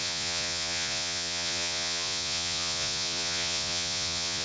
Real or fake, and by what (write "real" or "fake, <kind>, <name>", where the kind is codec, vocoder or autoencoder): fake, vocoder, Vocos